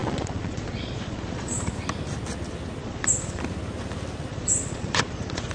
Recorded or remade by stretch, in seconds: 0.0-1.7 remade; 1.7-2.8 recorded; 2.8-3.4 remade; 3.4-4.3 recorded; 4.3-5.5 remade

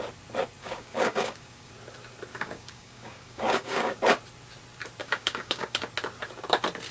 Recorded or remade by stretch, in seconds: 0.0-0.6 recorded; 0.6-1.7 remade; 1.7-2.3 recorded; 2.3-4.0 remade; 4.0-5.0 recorded; 5.0-5.8 remade; 5.8-6.9 recorded

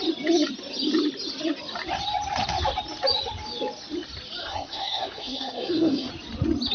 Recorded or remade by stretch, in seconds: 0.0-4.4 recorded; 4.4-6.1 remade; 6.1-6.7 recorded

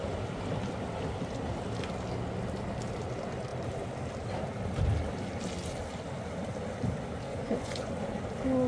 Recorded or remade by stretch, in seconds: 0.0-7.3 recorded; 7.3-7.9 remade; 7.9-8.7 recorded